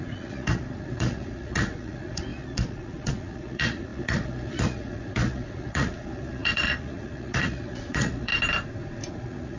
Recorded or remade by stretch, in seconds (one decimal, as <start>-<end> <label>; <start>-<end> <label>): 0.0-8.3 remade; 8.3-9.1 recorded; 9.1-9.6 remade